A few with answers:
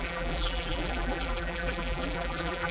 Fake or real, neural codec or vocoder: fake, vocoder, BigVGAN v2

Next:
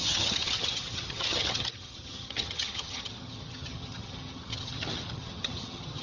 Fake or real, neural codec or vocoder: fake, vocoder, HiFi-GAN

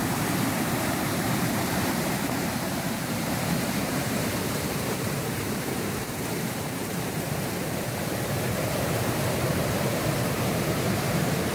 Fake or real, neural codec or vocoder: fake, vocoder, BigVGAN v2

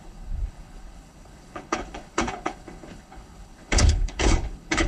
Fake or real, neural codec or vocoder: fake, codec, HILCodec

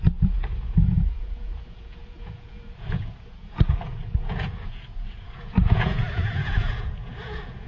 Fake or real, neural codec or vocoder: fake, vocoder, Vocos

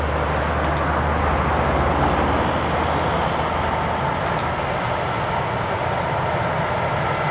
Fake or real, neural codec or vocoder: real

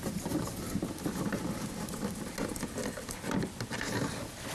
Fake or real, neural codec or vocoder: real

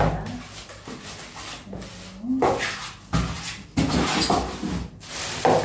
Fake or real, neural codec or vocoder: real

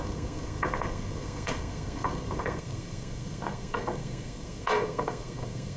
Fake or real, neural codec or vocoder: fake, codec, SNAC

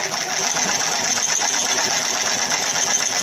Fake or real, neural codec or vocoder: fake, vocoder, BigVGAN v2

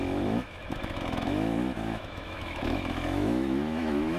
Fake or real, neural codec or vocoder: fake, autoencoder, DAC-VAE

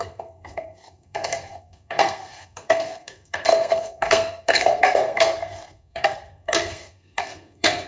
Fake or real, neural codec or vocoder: fake, codec, SNAC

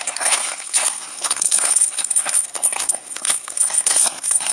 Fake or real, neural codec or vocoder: fake, codec, SNAC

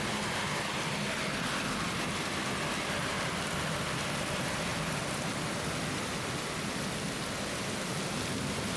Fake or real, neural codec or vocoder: real